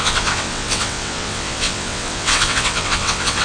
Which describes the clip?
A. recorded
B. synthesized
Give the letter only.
B